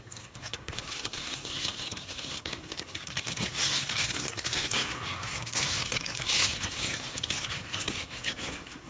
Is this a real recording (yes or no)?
no